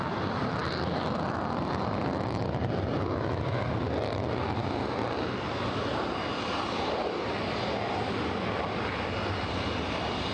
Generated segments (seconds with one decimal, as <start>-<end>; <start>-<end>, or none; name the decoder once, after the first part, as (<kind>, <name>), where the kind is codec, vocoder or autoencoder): none